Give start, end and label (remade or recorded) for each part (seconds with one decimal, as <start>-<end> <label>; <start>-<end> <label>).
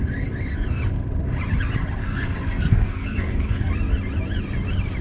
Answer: 0.0-2.0 recorded; 2.0-3.7 remade; 3.7-5.0 recorded